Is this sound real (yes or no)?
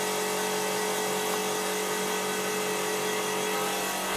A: yes